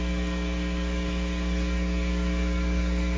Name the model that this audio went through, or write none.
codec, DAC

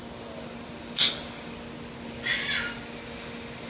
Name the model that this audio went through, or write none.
none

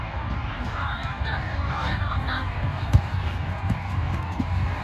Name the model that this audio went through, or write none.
codec, DAC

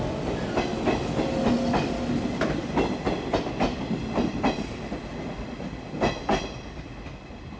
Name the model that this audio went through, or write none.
none